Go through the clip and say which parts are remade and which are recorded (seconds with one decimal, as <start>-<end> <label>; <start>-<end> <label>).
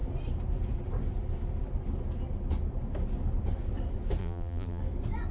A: 0.0-4.2 recorded; 4.2-4.8 remade; 4.8-5.3 recorded